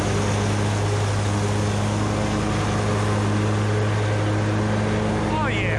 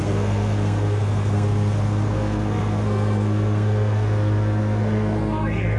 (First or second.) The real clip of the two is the first